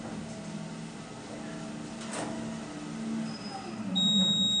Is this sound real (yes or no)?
yes